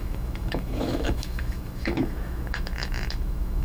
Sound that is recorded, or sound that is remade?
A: remade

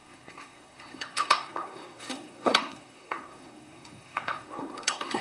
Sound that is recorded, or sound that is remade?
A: remade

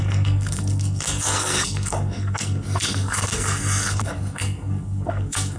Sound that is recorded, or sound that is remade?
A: remade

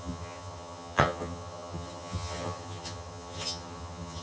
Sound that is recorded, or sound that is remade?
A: remade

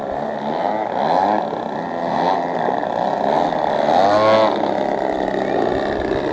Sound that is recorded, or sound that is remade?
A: recorded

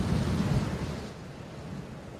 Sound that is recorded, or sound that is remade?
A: recorded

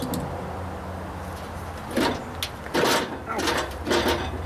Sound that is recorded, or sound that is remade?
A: recorded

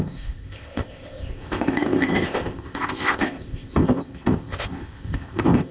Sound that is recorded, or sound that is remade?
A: remade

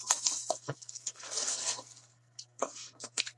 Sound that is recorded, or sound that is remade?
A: remade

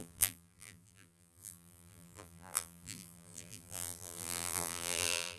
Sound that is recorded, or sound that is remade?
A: remade